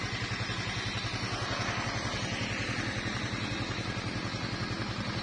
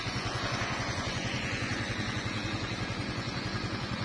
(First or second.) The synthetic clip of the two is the second